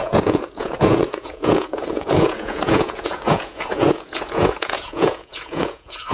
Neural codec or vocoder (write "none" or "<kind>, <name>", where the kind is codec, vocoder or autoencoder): vocoder, Vocos